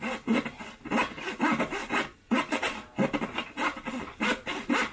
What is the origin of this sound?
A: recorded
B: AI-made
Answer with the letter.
A